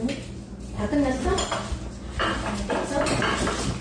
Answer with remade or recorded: recorded